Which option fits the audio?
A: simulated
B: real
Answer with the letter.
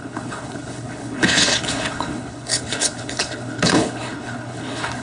A